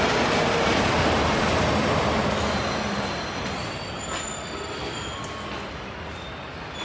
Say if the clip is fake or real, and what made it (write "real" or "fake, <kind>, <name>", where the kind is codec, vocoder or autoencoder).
real